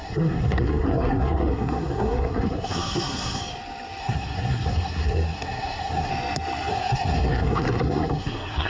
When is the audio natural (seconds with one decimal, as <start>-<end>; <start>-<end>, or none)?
3.4-4.0; 6.1-6.7